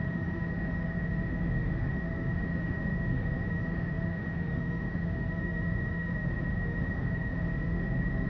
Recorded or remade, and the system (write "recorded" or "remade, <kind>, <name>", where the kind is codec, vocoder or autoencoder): remade, autoencoder, DAC-VAE